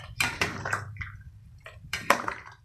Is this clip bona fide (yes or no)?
no